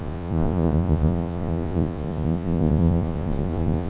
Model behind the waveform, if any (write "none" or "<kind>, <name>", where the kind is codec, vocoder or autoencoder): vocoder, Vocos